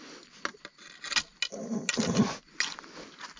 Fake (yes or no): no